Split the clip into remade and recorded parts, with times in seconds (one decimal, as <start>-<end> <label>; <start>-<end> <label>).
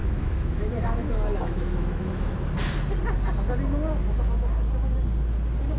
0.0-2.3 remade; 2.3-5.8 recorded